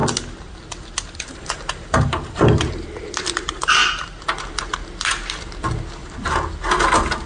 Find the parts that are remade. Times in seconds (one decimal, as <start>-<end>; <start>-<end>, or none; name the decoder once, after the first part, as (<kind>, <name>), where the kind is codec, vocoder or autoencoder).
1.3-3.8 (vocoder, BigVGAN v2)